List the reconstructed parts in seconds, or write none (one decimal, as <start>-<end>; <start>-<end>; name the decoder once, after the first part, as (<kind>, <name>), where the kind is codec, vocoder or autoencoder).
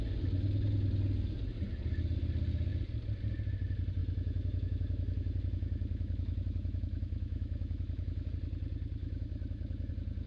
4.0-8.3 (autoencoder, DAC-VAE); 9.0-9.9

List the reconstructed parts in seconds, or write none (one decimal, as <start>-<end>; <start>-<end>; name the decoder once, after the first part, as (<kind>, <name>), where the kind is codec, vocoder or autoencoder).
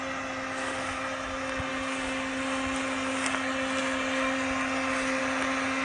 none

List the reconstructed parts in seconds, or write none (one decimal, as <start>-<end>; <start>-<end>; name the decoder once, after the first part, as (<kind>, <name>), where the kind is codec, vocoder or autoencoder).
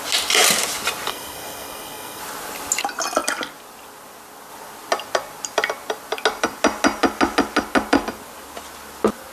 1.1-2.2 (codec, SNAC)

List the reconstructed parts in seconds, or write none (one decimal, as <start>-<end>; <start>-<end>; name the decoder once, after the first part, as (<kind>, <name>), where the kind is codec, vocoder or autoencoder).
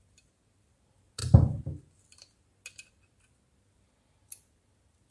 none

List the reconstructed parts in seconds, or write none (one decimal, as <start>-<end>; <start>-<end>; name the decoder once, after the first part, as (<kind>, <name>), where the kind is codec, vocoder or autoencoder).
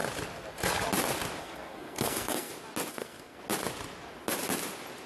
1.4-2.5 (codec, SNAC); 2.9-3.4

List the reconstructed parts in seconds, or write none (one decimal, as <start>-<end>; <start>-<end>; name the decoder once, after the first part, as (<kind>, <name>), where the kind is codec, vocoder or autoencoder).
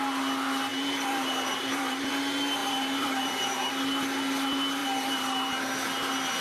0.7-2.1 (vocoder, BigVGAN v2); 2.6-3.7; 4.8-5.5